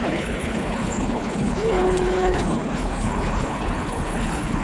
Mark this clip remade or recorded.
remade